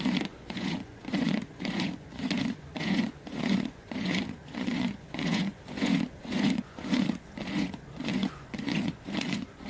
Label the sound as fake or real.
fake